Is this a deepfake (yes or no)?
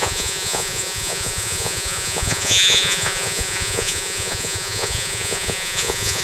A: yes